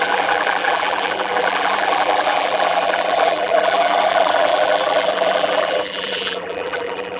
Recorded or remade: remade